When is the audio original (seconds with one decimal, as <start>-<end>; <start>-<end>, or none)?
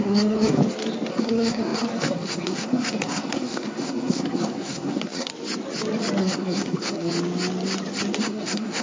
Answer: 0.6-1.1; 5.3-6.2; 7.1-8.2